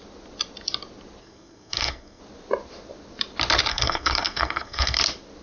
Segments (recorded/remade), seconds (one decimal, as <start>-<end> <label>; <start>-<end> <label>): 0.0-1.2 recorded; 1.2-2.2 remade; 2.2-3.7 recorded; 3.7-5.0 remade; 5.0-5.4 recorded